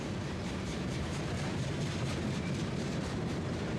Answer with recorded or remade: remade